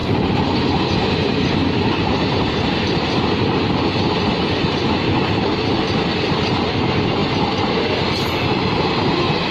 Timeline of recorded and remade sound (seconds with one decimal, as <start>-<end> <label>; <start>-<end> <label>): 0.0-2.7 remade; 2.7-9.5 recorded